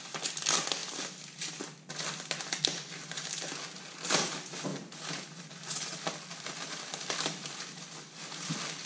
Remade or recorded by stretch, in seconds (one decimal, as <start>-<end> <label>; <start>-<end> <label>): 0.0-8.9 recorded